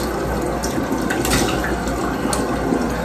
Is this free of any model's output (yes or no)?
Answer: yes